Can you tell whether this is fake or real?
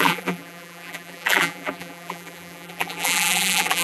fake